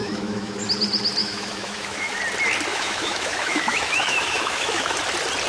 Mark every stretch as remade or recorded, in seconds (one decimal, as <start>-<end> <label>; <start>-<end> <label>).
0.0-0.6 remade; 0.6-1.2 recorded; 1.2-2.2 remade; 2.2-2.7 recorded; 2.7-5.0 remade; 5.0-5.5 recorded